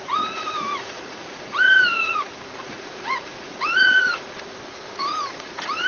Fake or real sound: fake